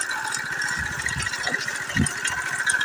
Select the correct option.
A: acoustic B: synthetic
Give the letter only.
B